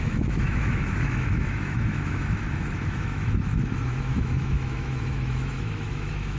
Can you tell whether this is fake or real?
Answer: fake